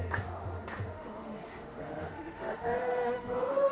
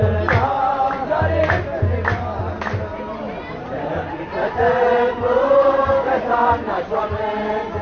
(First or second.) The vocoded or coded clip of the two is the first